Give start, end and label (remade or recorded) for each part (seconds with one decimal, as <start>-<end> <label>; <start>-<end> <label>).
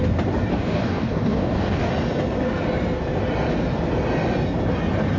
0.0-0.5 recorded; 0.5-1.9 remade; 1.9-5.2 recorded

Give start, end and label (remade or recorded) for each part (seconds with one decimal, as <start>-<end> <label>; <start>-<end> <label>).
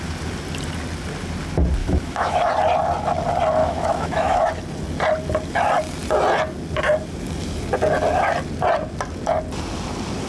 0.0-1.8 recorded; 1.8-2.5 remade; 2.5-3.6 recorded; 3.6-4.5 remade; 4.5-10.3 recorded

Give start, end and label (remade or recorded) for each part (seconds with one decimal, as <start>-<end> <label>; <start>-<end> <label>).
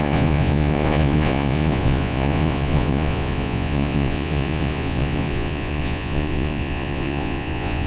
0.0-7.9 remade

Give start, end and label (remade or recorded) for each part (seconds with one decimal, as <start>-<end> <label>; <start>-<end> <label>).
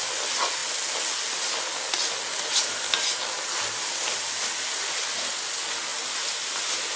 0.0-7.0 recorded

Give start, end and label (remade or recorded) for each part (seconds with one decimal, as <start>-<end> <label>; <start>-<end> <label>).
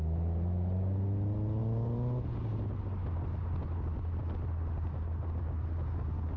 0.0-6.4 recorded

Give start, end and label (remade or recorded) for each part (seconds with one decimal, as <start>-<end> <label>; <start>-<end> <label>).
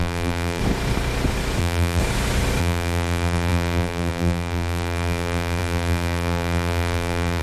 0.0-0.6 remade; 0.6-1.6 recorded; 1.6-2.0 remade; 2.0-2.6 recorded; 2.6-7.4 remade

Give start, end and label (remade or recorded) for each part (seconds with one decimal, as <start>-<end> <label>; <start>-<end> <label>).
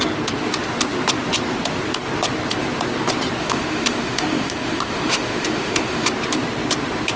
0.0-3.4 recorded; 3.4-6.1 remade; 6.1-7.2 recorded